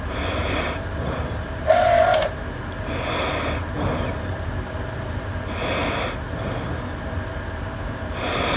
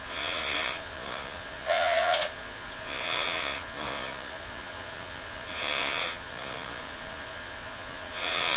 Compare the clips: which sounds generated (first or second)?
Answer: second